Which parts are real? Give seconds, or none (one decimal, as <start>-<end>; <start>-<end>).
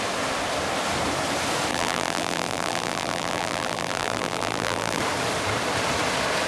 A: 0.0-1.7; 5.0-6.5